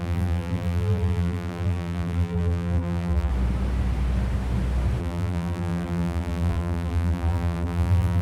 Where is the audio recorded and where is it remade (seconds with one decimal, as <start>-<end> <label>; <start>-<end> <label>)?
0.0-3.3 remade; 3.3-5.0 recorded; 5.0-8.2 remade